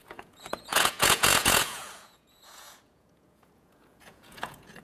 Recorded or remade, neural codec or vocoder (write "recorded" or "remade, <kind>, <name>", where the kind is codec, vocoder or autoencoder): remade, vocoder, Vocos